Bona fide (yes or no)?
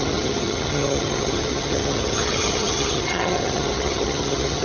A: no